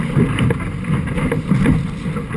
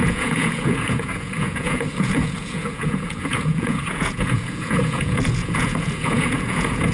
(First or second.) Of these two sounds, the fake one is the second